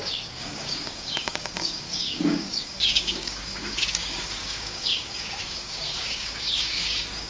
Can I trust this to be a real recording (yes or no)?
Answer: no